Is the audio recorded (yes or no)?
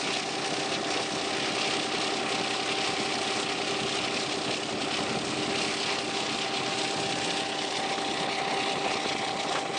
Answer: yes